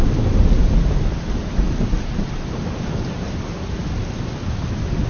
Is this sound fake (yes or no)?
no